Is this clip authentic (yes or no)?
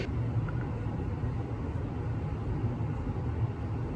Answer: yes